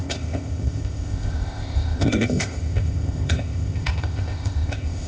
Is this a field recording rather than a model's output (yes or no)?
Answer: no